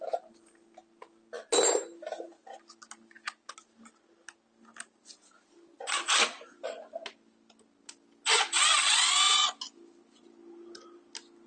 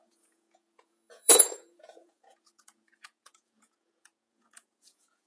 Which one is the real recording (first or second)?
first